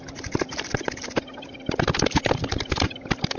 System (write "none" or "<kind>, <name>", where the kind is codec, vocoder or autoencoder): none